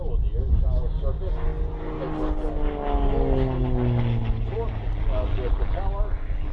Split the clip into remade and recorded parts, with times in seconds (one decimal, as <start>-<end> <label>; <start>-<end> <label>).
0.0-6.5 recorded